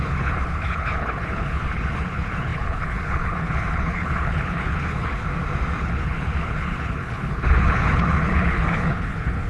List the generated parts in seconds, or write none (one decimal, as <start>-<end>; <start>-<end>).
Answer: 0.0-5.3; 5.8-9.5